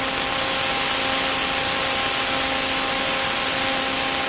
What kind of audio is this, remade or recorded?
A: recorded